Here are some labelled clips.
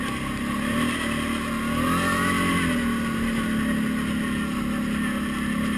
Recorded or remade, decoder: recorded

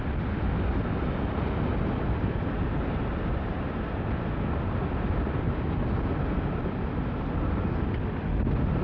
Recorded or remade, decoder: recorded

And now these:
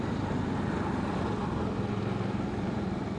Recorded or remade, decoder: recorded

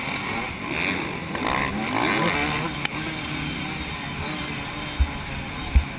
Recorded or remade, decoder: recorded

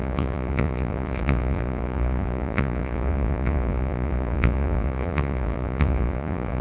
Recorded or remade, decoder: remade, vocoder, Vocos